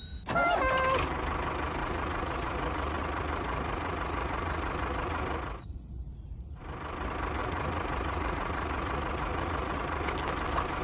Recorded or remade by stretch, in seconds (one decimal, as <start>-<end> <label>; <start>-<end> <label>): 0.0-1.8 recorded; 1.8-6.6 remade; 6.6-7.4 recorded; 7.4-10.1 remade; 10.1-10.8 recorded